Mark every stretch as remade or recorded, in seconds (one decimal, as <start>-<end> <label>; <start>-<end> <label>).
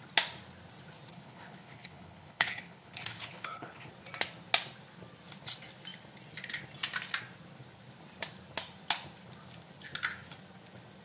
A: 0.0-1.1 recorded; 1.1-3.9 remade; 3.9-11.0 recorded